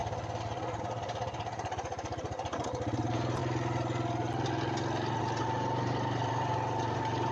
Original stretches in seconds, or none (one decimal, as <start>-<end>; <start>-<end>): 0.0-0.8; 3.4-5.2